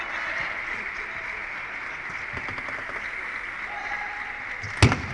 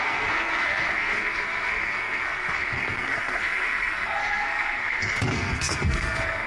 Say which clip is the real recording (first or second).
first